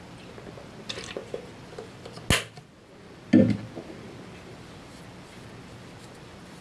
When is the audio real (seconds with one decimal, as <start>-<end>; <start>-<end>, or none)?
0.0-6.6